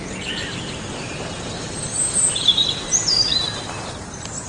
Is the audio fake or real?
fake